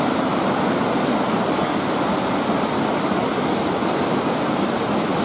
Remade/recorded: recorded